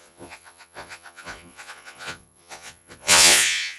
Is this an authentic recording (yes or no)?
no